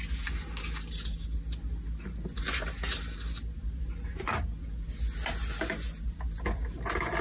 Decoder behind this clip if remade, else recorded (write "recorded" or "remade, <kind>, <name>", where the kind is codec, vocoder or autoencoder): recorded